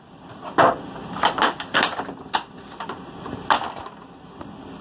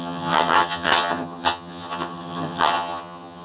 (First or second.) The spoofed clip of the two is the second